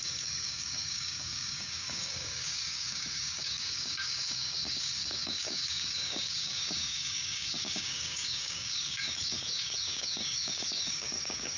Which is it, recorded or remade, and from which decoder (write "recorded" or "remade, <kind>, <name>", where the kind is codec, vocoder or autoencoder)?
remade, codec, DAC